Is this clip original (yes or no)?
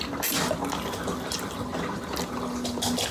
yes